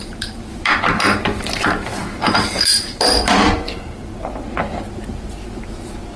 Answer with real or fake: fake